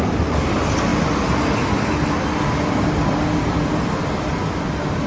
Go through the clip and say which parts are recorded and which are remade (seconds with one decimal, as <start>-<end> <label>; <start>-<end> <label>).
0.0-5.1 recorded